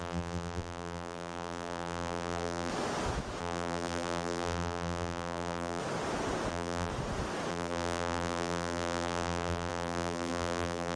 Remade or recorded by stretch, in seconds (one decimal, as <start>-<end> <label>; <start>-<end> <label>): 0.0-2.7 remade; 2.7-3.4 recorded; 3.4-5.8 remade; 5.8-6.5 recorded; 6.5-6.9 remade; 6.9-7.5 recorded; 7.5-11.0 remade